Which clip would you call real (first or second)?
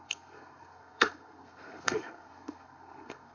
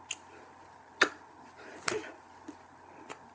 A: second